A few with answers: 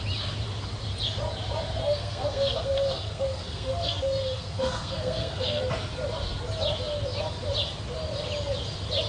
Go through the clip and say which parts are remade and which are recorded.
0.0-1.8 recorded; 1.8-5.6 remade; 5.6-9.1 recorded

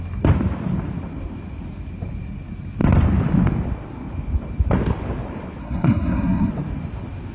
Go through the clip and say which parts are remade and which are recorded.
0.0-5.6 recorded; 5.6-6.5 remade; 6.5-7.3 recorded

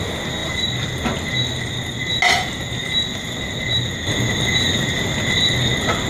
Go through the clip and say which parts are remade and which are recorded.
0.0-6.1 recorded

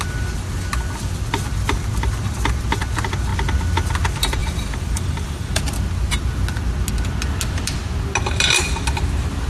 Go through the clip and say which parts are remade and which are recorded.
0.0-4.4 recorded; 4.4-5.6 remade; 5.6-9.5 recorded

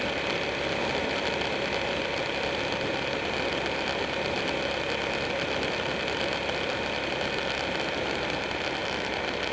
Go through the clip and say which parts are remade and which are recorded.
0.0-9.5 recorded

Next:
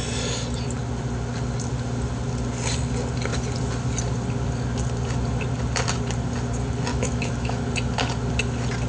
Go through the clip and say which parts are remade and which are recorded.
0.0-6.9 recorded; 6.9-7.6 remade; 7.6-8.9 recorded